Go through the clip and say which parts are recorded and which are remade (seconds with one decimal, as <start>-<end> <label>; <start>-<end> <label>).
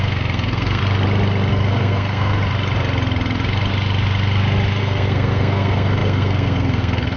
0.0-0.8 remade; 0.8-1.5 recorded; 1.5-2.4 remade; 2.4-4.8 recorded; 4.8-7.2 remade